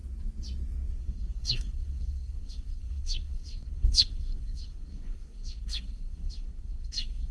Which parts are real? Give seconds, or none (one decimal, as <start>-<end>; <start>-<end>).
0.0-1.0